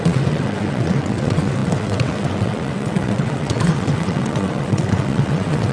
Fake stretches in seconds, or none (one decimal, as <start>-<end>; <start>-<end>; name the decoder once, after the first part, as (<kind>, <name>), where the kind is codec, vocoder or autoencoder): 0.0-5.7 (vocoder, WaveNeXt)